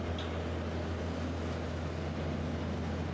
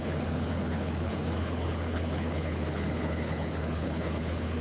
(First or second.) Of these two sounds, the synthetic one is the second